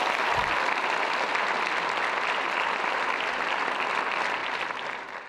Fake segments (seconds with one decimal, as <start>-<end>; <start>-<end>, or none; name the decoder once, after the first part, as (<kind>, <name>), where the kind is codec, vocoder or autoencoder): none

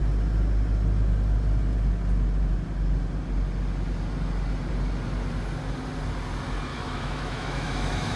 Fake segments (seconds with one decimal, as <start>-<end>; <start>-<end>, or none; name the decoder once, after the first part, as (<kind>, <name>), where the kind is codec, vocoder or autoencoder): 6.7-8.2 (autoencoder, DAC-VAE)

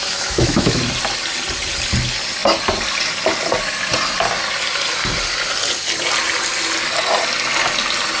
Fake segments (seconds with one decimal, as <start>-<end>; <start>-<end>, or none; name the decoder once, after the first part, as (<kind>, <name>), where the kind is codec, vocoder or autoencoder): 0.0-0.8 (autoencoder, DAC-VAE)

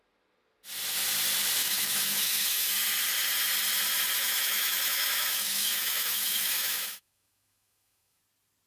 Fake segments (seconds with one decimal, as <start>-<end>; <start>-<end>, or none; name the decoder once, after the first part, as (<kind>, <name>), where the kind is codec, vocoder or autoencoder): 1.6-2.7 (autoencoder, DAC-VAE); 4.2-8.2